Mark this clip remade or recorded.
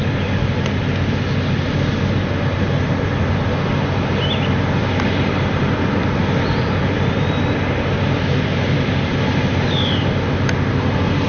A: recorded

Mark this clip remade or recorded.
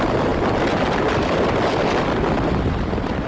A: recorded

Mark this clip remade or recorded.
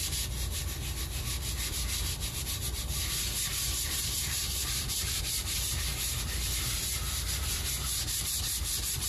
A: remade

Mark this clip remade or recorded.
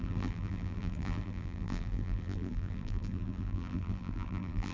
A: remade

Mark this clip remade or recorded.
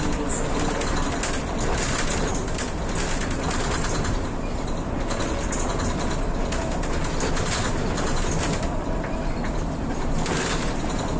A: remade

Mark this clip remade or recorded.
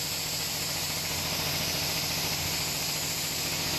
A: recorded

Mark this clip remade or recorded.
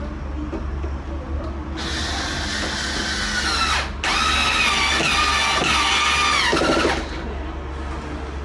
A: recorded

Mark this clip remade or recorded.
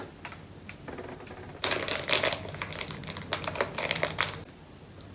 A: recorded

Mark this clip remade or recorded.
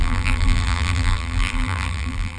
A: remade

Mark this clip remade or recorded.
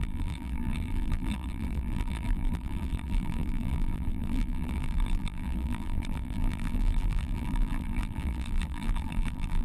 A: remade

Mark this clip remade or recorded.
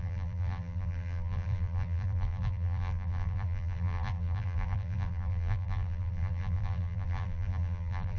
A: remade